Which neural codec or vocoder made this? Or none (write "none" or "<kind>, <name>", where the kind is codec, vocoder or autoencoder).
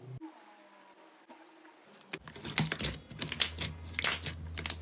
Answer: none